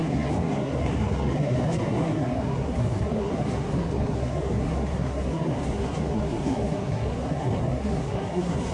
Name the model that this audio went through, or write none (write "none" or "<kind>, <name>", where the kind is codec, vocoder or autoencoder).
codec, SNAC